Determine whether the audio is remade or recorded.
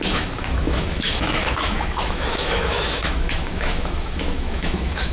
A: remade